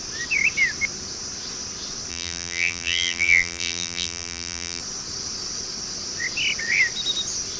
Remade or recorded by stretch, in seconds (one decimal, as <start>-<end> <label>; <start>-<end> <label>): 0.0-2.1 recorded; 2.1-4.8 remade; 4.8-7.6 recorded